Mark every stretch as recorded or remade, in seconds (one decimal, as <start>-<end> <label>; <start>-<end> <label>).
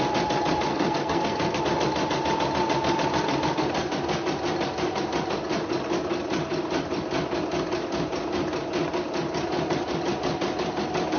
0.0-0.7 recorded; 0.7-1.6 remade; 1.6-11.2 recorded